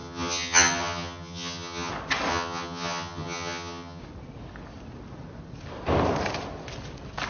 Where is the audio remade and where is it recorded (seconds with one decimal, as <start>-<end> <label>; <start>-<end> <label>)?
0.0-1.9 remade; 1.9-2.3 recorded; 2.3-4.0 remade; 4.0-7.3 recorded